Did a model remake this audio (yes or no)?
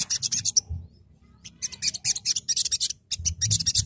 no